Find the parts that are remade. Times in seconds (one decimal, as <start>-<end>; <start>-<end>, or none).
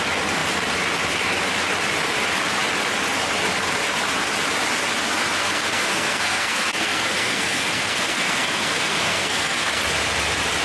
5.4-9.8